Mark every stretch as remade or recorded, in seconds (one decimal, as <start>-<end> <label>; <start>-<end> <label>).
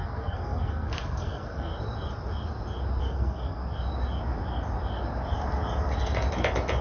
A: 0.0-1.7 remade; 1.7-3.0 recorded; 3.0-3.6 remade; 3.6-6.8 recorded